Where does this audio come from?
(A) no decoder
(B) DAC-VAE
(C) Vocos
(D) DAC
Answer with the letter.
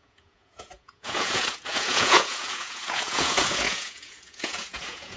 C